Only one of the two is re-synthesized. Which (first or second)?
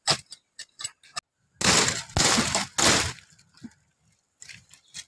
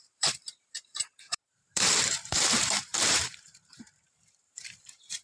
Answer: second